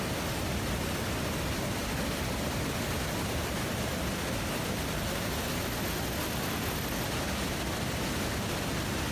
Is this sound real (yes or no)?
yes